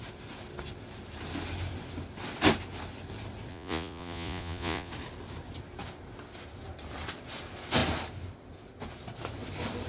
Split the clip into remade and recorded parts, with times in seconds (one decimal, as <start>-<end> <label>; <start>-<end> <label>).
0.0-3.5 recorded; 3.5-4.9 remade; 4.9-9.9 recorded